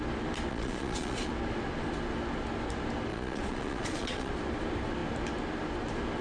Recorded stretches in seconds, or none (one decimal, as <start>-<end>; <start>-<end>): 0.0-0.5; 1.3-3.1; 4.3-6.2